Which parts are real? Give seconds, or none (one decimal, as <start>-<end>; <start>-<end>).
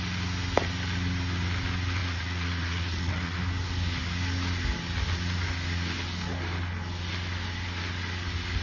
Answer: 0.0-2.0; 3.4-8.6